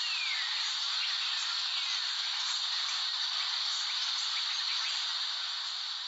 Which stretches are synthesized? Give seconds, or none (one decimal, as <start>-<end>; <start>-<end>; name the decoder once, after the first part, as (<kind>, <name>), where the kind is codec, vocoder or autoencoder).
0.0-1.6 (vocoder, BigVGAN v2); 3.8-5.1